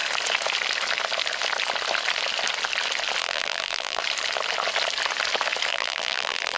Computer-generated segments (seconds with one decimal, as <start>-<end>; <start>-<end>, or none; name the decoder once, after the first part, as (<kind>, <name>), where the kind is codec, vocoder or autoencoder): 3.2-4.0 (vocoder, BigVGAN v2); 5.7-6.6